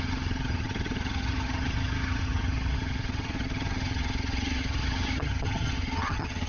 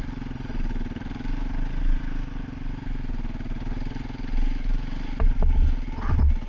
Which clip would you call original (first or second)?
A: second